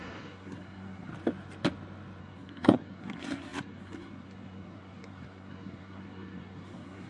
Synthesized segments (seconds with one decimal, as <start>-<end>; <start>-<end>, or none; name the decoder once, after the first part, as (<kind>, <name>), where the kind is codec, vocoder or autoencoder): 0.0-1.1 (codec, SNAC); 2.2-7.1